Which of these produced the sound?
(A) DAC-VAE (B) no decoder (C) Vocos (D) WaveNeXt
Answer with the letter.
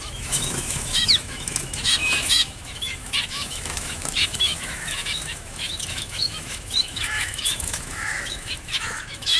A